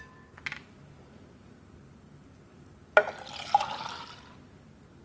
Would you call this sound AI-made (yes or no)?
no